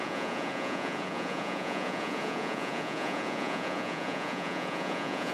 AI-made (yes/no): yes